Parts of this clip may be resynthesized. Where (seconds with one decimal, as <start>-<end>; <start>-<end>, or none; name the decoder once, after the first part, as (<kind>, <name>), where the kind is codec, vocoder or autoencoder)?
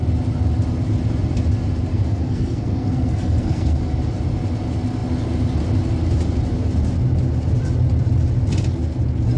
1.9-3.8 (codec, SNAC)